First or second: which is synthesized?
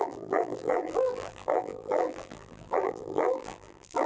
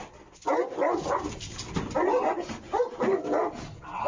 first